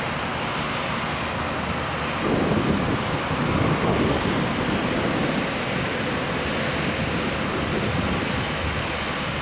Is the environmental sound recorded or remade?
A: recorded